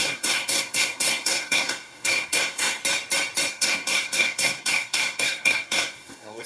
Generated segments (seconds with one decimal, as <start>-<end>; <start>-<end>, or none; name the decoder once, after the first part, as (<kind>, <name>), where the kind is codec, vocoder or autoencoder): 0.0-2.8 (codec, SNAC); 3.5-6.5